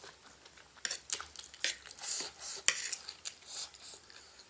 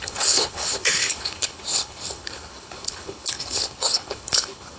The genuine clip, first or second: first